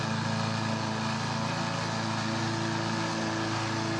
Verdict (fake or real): real